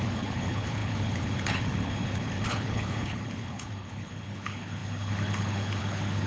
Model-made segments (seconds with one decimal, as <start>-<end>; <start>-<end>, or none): 0.0-6.3

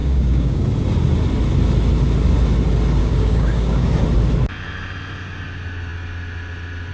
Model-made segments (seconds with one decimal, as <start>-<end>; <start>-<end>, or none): 0.0-0.6; 3.0-3.9

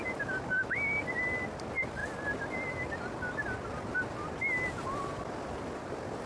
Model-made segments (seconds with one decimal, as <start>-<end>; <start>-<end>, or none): none

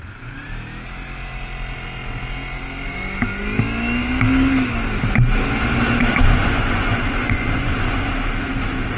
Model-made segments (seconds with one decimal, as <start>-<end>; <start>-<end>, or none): 6.1-8.1

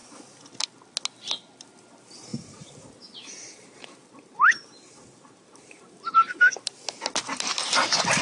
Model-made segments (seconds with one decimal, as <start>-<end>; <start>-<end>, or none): 2.3-6.5

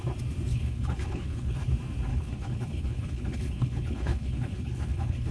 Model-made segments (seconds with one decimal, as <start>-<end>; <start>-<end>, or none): 0.5-1.7; 2.1-5.3